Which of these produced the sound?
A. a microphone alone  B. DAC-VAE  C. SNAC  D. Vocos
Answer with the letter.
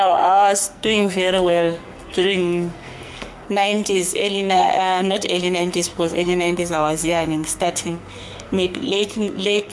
C